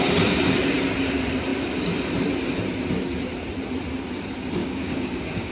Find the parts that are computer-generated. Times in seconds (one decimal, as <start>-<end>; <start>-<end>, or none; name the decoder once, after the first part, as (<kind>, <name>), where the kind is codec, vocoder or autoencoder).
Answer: 4.6-5.5 (codec, DAC)